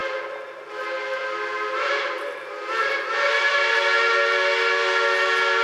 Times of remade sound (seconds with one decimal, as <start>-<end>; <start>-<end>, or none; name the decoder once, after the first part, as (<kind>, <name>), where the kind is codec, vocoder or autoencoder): none